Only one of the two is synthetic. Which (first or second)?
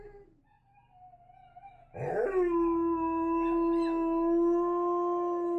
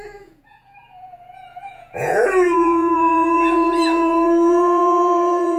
second